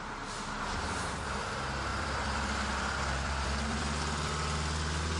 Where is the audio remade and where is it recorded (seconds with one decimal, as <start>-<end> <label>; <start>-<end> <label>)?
0.0-1.9 recorded; 1.9-5.2 remade